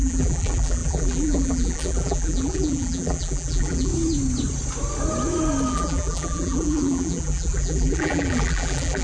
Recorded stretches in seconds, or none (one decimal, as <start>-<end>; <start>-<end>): 3.9-5.7